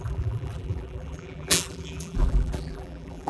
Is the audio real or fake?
fake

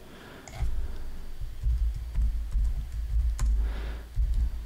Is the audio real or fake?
real